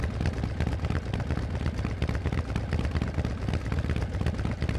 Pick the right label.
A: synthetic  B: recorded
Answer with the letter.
B